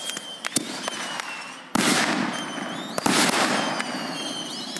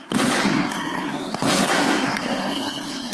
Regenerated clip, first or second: second